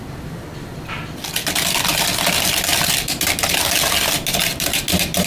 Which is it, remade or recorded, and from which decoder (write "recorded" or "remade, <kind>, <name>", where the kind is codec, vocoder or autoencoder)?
recorded